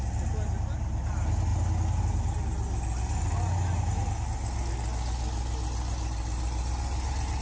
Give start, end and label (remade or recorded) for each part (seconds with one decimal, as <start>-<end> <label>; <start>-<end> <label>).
0.0-7.4 recorded